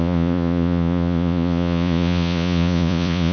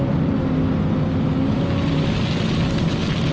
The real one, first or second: second